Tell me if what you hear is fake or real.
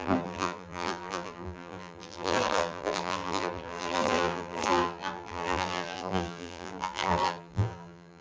fake